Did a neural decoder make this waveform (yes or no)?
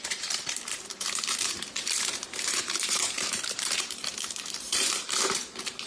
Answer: yes